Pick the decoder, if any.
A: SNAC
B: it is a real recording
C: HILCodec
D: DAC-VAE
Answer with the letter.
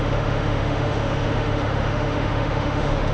D